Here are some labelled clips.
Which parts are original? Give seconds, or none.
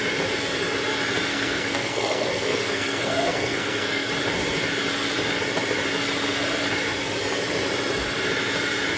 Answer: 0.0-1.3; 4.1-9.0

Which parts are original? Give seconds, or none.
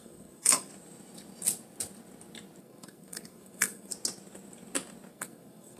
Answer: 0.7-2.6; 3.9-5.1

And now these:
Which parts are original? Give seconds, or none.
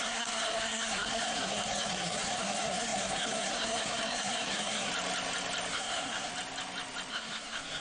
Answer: 4.9-5.7; 6.3-7.1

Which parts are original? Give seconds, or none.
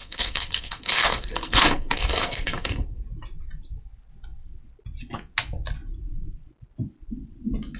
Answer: 3.0-7.8